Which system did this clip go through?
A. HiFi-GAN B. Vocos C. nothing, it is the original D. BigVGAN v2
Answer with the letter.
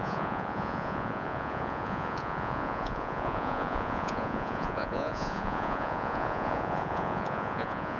B